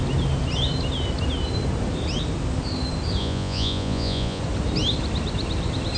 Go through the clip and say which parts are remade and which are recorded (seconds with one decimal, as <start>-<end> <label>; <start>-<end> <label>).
0.0-3.2 recorded; 3.2-4.4 remade; 4.4-6.0 recorded